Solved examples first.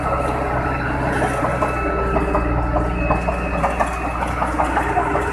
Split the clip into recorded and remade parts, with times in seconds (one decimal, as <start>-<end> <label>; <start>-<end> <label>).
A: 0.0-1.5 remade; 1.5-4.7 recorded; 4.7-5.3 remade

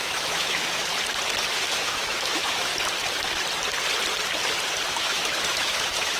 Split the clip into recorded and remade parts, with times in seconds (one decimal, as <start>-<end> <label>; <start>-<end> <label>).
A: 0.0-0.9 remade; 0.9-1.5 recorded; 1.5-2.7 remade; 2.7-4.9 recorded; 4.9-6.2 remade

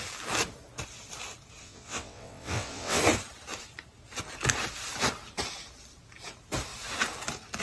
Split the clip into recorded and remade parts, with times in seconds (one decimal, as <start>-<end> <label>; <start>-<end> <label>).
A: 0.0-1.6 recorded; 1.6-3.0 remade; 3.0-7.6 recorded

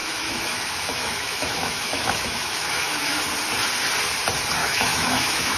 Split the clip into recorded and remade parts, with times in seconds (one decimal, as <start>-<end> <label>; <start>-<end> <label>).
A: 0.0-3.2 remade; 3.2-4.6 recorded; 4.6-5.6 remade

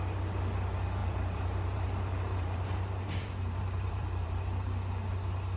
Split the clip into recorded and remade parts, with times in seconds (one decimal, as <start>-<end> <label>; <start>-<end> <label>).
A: 0.0-1.0 recorded; 1.0-4.4 remade; 4.4-5.6 recorded

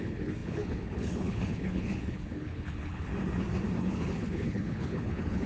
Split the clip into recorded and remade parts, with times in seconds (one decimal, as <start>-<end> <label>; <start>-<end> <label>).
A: 0.0-3.1 remade; 3.1-3.8 recorded; 3.8-5.5 remade